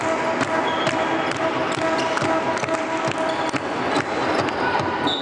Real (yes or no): yes